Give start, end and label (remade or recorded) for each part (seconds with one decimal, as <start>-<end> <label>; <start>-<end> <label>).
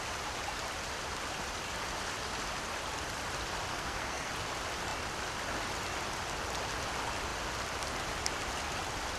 0.0-3.7 recorded; 3.7-4.3 remade; 4.3-9.2 recorded